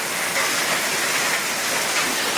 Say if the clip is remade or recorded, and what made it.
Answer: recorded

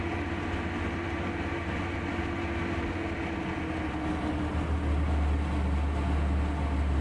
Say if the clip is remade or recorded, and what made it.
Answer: recorded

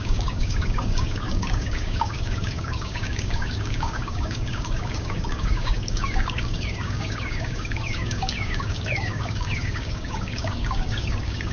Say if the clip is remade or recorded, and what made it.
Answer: remade, codec, DAC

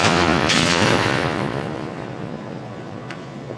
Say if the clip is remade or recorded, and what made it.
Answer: remade, vocoder, Vocos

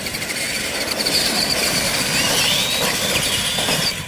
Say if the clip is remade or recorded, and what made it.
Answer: recorded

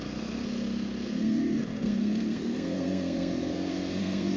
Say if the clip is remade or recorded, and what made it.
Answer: remade, codec, SNAC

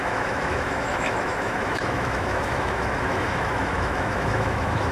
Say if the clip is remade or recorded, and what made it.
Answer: remade, autoencoder, DAC-VAE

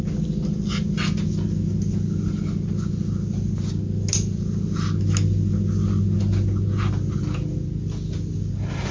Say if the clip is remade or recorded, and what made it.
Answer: recorded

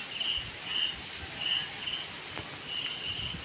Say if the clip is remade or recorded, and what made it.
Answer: recorded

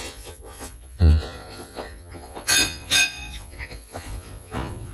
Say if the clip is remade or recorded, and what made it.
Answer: remade, vocoder, Vocos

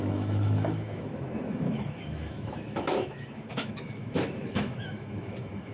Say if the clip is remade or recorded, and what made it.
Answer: remade, autoencoder, DAC-VAE